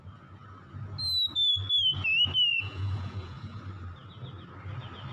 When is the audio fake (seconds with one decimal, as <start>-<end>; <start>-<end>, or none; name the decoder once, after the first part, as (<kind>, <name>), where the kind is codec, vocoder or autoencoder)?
2.5-3.6 (vocoder, Vocos)